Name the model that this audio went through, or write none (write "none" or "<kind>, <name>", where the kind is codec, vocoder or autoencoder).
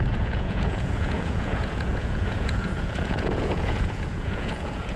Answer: vocoder, Vocos